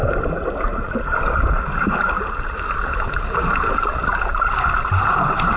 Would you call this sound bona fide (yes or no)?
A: yes